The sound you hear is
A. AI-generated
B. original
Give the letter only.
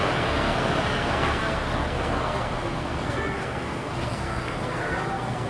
A